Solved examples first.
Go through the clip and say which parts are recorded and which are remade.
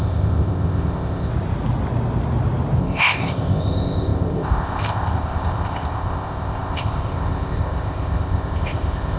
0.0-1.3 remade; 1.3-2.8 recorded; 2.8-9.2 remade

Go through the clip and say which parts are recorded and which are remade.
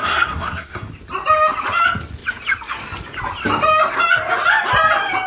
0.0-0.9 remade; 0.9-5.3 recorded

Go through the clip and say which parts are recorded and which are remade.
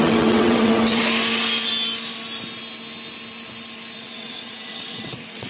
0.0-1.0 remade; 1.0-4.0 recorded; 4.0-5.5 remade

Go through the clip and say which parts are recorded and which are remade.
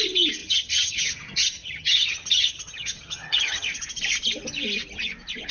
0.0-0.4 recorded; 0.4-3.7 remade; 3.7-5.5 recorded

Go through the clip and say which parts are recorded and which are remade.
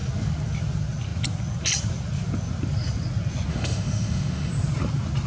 0.0-3.5 recorded; 3.5-4.5 remade; 4.5-5.3 recorded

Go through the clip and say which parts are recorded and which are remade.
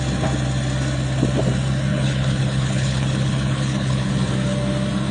0.0-1.9 recorded; 1.9-4.1 remade; 4.1-5.1 recorded